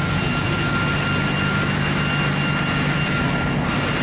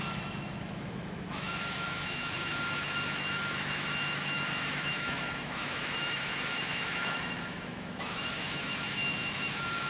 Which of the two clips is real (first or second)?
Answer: first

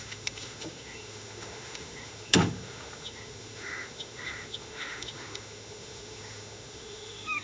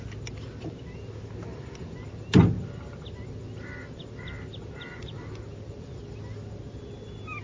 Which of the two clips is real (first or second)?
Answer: second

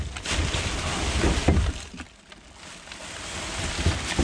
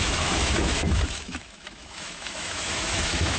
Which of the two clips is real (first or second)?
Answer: first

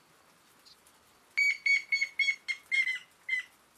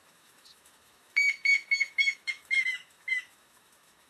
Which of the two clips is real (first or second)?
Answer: first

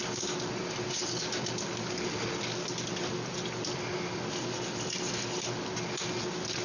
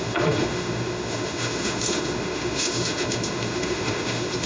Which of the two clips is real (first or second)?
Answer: first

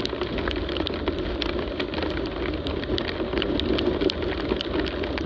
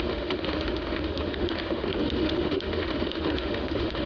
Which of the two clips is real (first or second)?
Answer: first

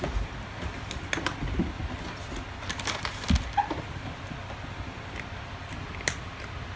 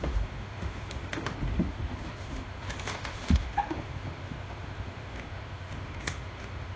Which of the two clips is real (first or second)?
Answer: first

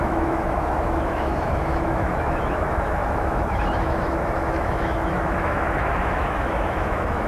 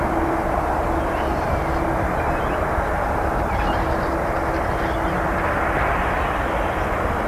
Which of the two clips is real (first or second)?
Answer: second